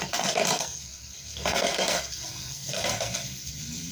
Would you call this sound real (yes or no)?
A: no